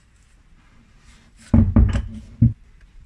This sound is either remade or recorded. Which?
recorded